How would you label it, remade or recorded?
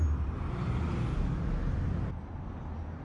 recorded